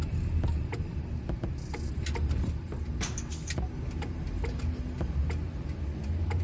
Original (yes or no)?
yes